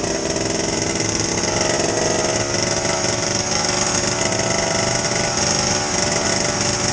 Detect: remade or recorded recorded